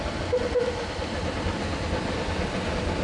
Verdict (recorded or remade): recorded